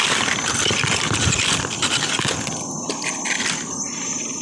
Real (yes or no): yes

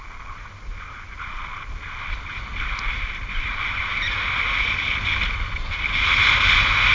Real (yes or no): yes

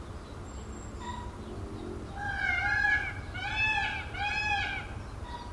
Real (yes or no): yes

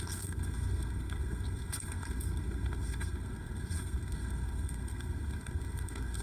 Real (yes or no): no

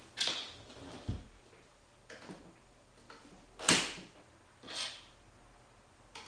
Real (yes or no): yes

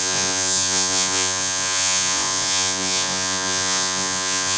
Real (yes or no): no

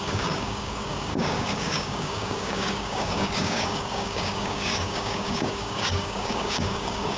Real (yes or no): no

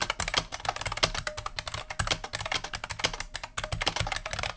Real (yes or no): yes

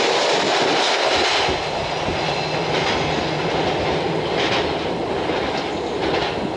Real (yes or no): yes